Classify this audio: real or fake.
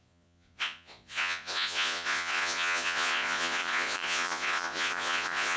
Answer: fake